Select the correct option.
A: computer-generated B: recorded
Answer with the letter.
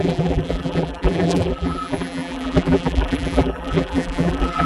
A